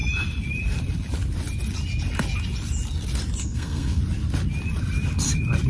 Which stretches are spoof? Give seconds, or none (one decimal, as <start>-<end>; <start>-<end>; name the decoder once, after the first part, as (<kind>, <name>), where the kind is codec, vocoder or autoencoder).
3.4-4.0 (codec, SNAC)